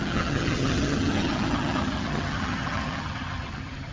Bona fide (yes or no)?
no